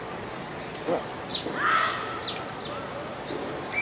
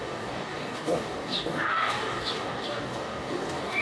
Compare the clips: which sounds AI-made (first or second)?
second